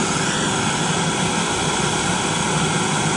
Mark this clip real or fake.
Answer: real